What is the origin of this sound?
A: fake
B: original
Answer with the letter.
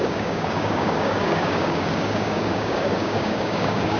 A